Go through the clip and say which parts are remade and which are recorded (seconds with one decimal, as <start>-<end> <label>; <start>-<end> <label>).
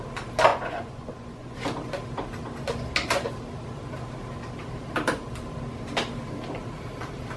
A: 0.0-0.5 recorded; 0.5-1.6 remade; 1.6-7.4 recorded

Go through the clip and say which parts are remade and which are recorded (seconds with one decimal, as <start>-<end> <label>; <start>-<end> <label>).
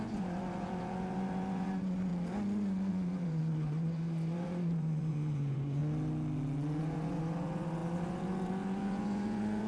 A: 0.0-2.1 remade; 2.1-2.9 recorded; 2.9-5.8 remade; 5.8-6.8 recorded; 6.8-9.7 remade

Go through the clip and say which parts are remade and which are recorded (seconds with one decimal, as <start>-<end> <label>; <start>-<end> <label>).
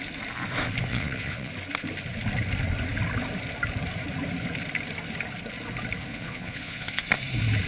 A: 0.0-0.9 recorded; 0.9-1.5 remade; 1.5-6.1 recorded; 6.1-7.0 remade; 7.0-7.7 recorded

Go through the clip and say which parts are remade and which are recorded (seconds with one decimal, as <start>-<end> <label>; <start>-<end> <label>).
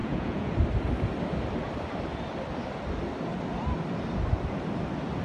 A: 0.0-0.5 remade; 0.5-5.2 recorded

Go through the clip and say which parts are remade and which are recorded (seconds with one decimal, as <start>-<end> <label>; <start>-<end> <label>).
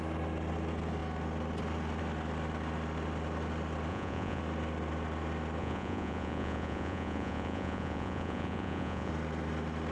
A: 0.0-3.9 recorded; 3.9-4.4 remade; 4.4-5.6 recorded; 5.6-9.1 remade; 9.1-9.9 recorded